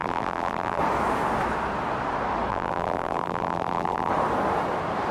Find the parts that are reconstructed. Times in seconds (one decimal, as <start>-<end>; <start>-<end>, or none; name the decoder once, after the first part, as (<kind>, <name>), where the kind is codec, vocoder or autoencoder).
0.0-0.8 (vocoder, BigVGAN v2); 2.5-4.1